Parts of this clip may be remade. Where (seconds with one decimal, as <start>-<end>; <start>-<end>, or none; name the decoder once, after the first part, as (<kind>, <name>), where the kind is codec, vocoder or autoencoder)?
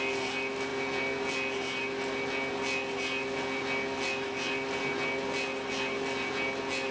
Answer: none